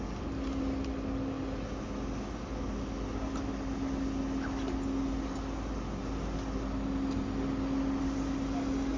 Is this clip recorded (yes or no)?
yes